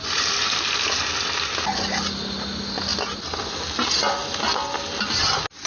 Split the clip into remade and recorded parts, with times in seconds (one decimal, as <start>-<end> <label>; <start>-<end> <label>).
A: 0.0-5.7 recorded